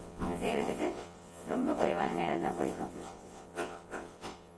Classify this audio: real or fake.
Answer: fake